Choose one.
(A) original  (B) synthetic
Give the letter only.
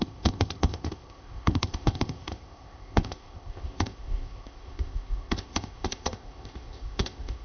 B